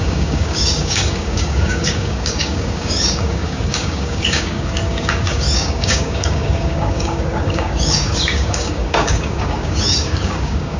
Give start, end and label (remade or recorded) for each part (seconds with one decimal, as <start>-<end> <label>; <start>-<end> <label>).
0.0-10.8 remade